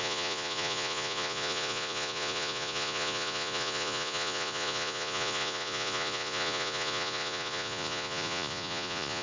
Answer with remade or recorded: remade